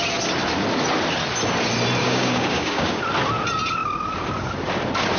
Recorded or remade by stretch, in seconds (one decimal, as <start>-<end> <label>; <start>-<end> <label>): 0.0-2.0 recorded; 2.0-3.0 remade; 3.0-5.2 recorded